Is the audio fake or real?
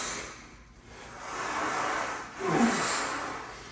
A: real